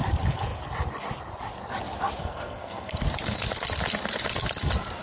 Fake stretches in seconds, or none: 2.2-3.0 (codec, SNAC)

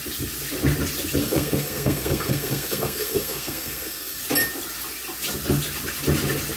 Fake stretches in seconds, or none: 1.2-4.2 (codec, SNAC)

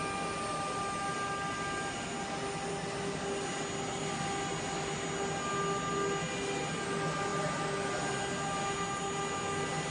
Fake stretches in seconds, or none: none

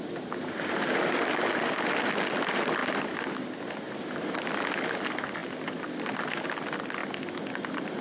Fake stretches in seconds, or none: none